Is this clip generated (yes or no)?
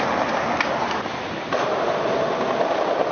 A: no